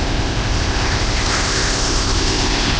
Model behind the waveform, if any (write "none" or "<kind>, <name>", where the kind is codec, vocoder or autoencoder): codec, ZipCodec